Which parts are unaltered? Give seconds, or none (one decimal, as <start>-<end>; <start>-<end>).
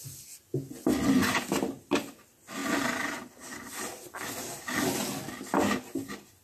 0.0-6.4